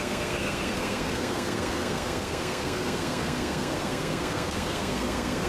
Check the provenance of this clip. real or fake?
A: fake